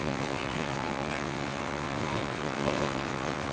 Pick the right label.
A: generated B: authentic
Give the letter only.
A